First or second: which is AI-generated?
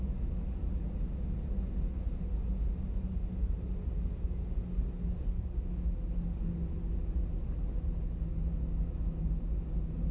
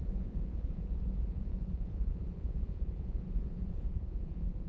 second